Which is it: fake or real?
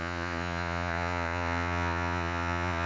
fake